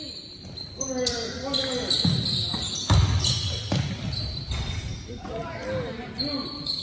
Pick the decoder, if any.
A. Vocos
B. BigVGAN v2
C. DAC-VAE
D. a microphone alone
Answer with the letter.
D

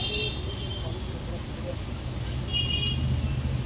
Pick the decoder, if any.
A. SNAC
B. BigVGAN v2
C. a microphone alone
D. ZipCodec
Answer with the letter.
C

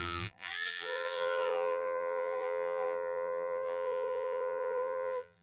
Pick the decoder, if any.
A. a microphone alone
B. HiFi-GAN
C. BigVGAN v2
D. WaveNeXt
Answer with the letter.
C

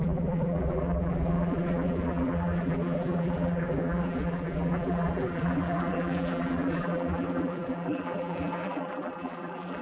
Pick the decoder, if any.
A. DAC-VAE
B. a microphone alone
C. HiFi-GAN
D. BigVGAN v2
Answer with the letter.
D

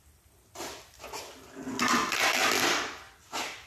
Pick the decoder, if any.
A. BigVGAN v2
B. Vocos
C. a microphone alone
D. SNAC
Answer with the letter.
C